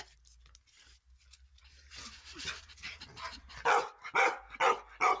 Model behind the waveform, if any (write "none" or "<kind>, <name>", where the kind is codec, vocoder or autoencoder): none